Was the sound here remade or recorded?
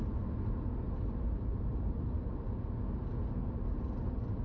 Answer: recorded